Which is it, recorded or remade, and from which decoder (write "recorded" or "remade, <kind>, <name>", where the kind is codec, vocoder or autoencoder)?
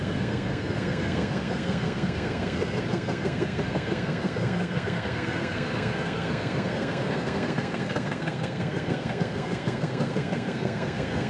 remade, codec, SNAC